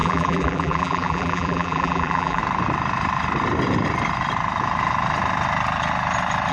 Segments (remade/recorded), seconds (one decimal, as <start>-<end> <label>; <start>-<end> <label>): 0.0-2.4 remade; 2.4-6.5 recorded